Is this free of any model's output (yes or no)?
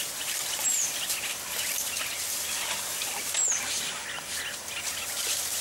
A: yes